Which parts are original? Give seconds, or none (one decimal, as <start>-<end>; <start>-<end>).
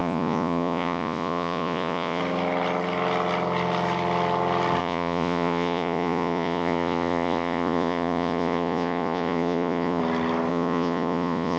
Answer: 2.2-4.8; 10.0-10.5